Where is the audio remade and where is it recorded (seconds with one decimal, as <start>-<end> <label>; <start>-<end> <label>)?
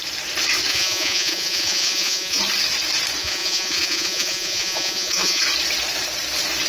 0.0-0.7 recorded; 0.7-2.4 remade; 2.4-3.2 recorded; 3.2-5.4 remade; 5.4-6.7 recorded